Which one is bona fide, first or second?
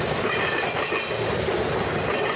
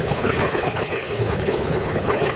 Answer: first